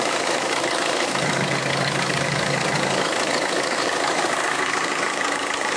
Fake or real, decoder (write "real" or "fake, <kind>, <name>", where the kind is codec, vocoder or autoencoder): fake, codec, DAC